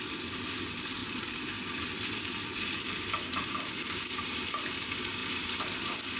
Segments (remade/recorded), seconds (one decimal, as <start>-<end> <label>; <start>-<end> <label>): 0.0-1.0 recorded; 1.0-4.7 remade; 4.7-5.2 recorded; 5.2-6.2 remade